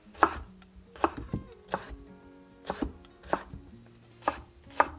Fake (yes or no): no